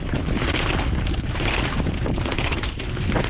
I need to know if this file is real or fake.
real